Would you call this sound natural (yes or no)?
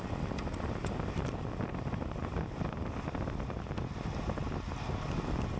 yes